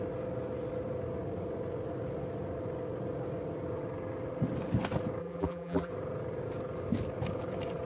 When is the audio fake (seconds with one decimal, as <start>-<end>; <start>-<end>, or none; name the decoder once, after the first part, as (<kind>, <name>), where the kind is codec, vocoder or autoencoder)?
5.2-5.9 (vocoder, BigVGAN v2)